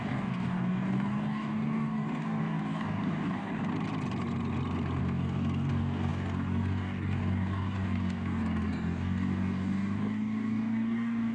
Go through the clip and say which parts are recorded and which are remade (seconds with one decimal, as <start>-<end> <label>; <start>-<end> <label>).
0.0-3.7 remade; 3.7-5.0 recorded; 5.0-11.3 remade